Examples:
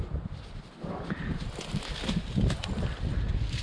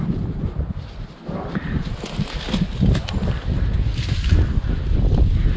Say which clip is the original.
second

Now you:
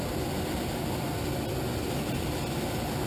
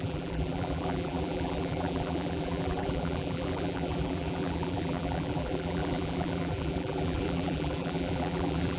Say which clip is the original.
first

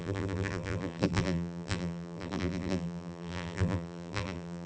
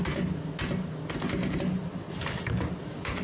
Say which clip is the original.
second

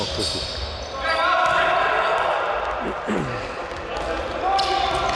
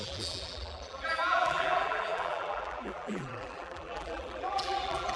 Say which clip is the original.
first